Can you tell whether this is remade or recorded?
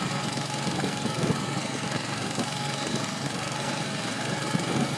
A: remade